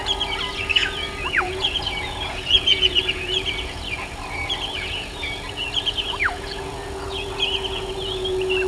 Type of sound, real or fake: fake